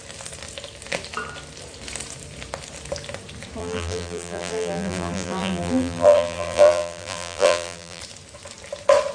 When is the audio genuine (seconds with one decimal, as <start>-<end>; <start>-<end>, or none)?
0.0-3.6; 8.0-9.1